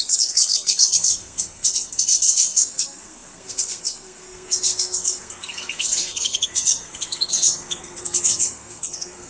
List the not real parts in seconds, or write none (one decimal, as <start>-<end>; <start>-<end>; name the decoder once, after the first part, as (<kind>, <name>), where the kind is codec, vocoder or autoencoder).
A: 0.0-9.3 (codec, SNAC)